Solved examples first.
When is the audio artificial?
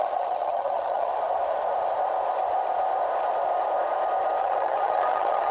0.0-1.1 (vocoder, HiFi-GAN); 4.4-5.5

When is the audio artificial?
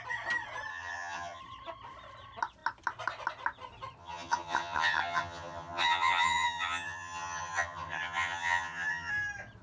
0.7-1.4 (vocoder, HiFi-GAN); 4.0-9.1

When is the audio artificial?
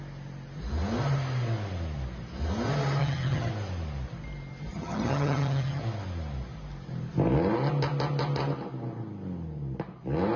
3.0-3.5 (vocoder, HiFi-GAN); 4.7-5.8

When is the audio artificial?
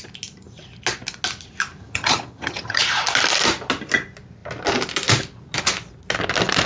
1.8-2.8 (vocoder, HiFi-GAN)